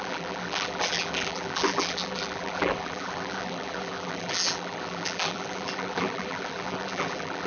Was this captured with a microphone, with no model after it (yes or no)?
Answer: no